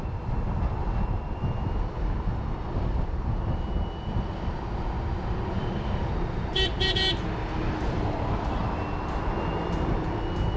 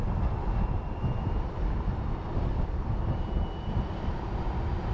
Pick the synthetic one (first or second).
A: second